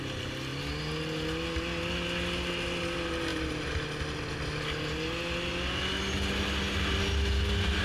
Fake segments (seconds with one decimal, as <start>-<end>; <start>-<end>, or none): none